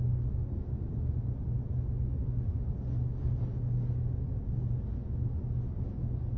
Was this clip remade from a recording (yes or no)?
no